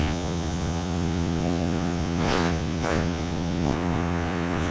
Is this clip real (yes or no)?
no